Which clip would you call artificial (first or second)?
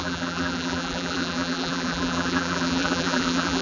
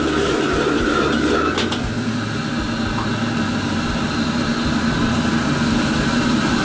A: first